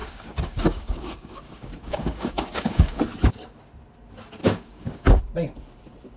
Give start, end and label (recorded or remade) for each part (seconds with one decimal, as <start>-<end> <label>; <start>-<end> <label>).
0.0-3.0 remade; 3.0-4.4 recorded; 4.4-5.2 remade; 5.2-6.2 recorded